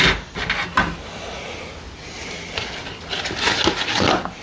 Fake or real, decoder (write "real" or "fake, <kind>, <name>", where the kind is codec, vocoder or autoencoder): real